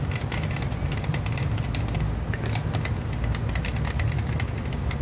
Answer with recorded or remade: recorded